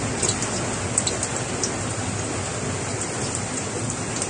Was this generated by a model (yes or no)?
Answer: no